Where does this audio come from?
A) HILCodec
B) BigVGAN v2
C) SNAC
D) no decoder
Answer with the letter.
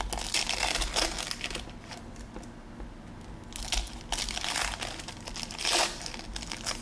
D